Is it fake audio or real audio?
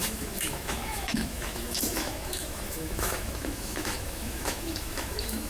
fake